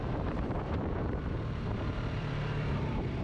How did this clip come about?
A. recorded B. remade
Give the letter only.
B